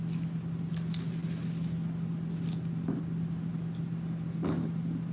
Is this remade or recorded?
recorded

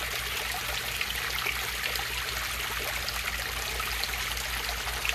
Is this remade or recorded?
recorded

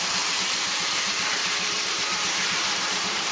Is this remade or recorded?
remade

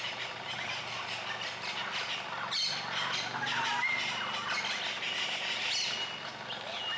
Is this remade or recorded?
recorded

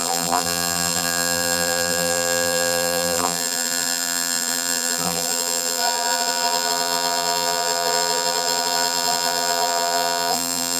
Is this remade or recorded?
remade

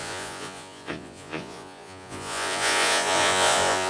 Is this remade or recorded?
remade